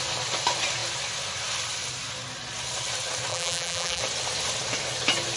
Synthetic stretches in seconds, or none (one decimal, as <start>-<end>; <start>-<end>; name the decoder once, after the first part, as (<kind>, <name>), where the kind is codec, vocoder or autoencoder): 3.3-4.0 (vocoder, BigVGAN v2)